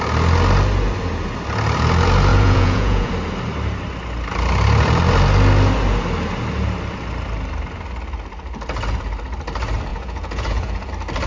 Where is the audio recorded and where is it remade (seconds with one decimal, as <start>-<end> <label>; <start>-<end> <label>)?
0.0-2.3 recorded; 2.3-3.1 remade; 3.1-9.9 recorded; 9.9-10.9 remade; 10.9-11.3 recorded